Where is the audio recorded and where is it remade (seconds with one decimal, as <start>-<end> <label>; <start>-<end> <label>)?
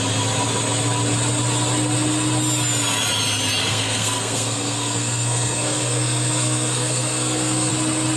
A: 0.0-3.6 recorded; 3.6-7.7 remade; 7.7-8.2 recorded